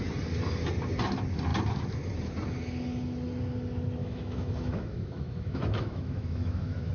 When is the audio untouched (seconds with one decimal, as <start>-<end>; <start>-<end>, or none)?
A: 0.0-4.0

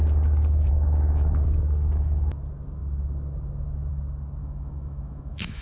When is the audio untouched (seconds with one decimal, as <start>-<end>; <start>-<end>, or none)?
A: 0.0-4.4

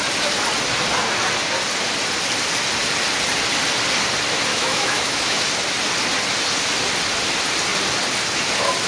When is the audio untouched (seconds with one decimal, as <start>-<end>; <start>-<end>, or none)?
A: 0.0-4.5; 5.4-8.9

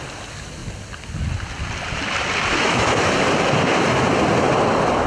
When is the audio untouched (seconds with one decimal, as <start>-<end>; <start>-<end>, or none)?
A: 0.0-2.5; 3.1-5.1